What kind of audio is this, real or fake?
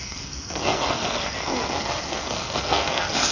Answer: fake